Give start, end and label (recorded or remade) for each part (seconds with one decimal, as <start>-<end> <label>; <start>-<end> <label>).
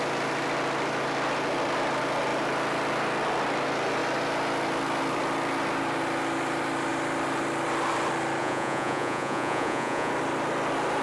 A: 0.0-8.4 recorded; 8.4-10.1 remade; 10.1-11.0 recorded